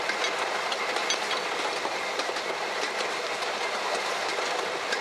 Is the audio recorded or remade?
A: recorded